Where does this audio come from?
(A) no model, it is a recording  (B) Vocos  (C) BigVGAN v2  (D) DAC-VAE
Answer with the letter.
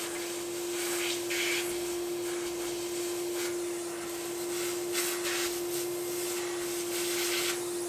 A